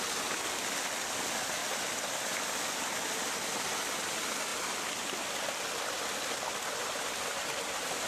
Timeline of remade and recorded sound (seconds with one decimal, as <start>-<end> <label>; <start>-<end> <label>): 0.0-8.1 recorded